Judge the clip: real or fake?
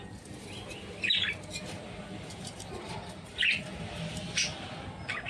real